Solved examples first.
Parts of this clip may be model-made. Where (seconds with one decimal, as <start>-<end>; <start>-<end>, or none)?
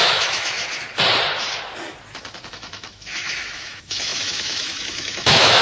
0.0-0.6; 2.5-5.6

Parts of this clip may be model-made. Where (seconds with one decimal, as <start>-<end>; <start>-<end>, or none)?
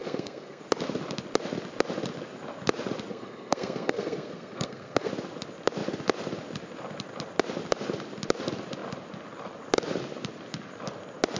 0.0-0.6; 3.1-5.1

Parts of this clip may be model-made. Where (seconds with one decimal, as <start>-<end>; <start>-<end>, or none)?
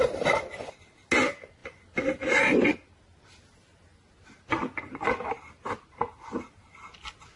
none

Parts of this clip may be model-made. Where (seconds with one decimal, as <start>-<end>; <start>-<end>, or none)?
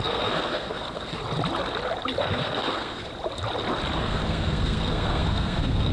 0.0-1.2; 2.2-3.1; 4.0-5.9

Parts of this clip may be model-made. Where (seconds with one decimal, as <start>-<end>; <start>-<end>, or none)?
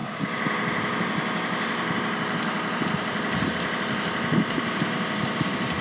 none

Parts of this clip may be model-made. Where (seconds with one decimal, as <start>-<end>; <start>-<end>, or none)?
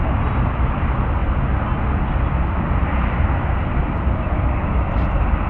none